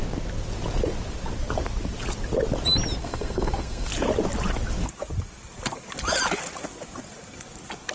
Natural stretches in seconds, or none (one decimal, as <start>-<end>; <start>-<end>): 0.0-3.0; 3.9-7.9